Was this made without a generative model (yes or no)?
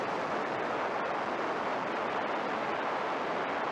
yes